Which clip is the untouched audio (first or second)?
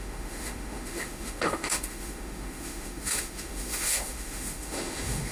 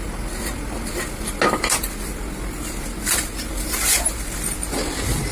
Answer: second